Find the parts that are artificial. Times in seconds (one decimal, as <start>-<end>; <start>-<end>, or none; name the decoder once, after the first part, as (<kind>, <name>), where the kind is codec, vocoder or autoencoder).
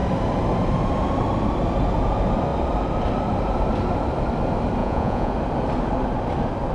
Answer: 4.8-5.3 (vocoder, Vocos)